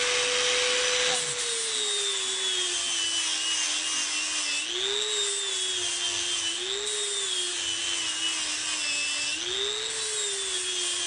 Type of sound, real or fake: real